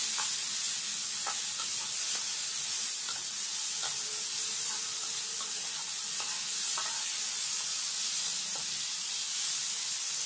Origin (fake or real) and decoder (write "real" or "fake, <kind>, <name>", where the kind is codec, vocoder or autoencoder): real